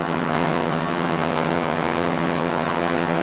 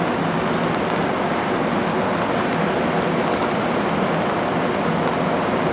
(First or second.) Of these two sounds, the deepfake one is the first